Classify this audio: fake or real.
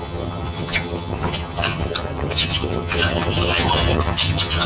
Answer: fake